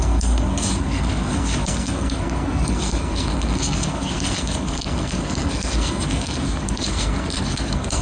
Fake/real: fake